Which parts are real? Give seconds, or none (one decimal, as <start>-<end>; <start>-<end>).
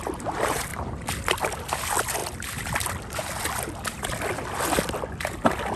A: 0.0-5.8